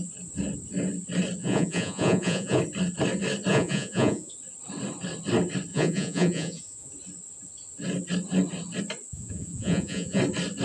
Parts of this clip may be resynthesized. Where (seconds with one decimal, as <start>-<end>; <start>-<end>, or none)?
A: 1.4-2.6; 3.5-4.3; 5.7-6.9; 9.1-10.2